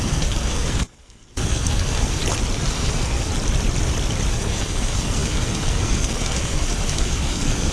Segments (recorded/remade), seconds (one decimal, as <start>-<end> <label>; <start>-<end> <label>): 0.0-2.2 remade; 2.2-2.7 recorded; 2.7-3.3 remade; 3.3-4.3 recorded; 4.3-7.7 remade